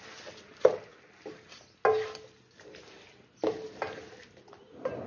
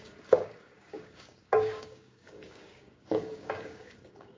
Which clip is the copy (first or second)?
second